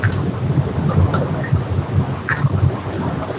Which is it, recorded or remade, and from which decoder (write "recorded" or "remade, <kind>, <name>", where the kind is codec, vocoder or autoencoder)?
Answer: recorded